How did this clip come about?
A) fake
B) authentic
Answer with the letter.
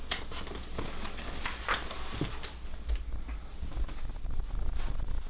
B